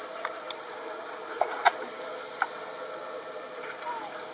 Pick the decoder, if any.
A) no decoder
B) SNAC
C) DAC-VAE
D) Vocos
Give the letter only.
A